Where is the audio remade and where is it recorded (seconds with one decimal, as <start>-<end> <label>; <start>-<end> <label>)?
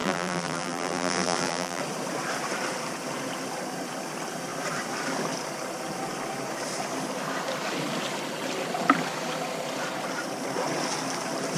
0.0-1.8 remade; 1.8-11.6 recorded